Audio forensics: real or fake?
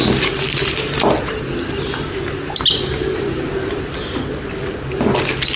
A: real